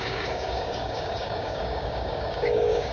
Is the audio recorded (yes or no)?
no